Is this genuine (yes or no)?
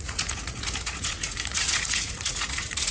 no